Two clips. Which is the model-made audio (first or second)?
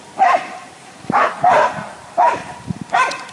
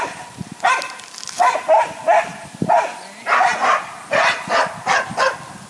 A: first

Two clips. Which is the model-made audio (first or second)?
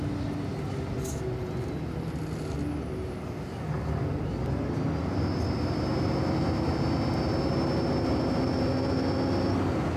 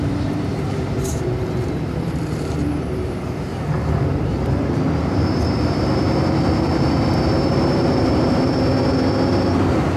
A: second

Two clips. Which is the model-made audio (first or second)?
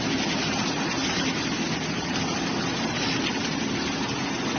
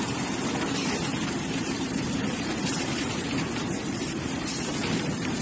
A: second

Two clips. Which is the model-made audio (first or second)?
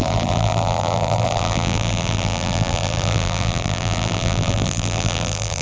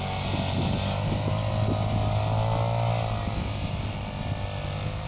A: first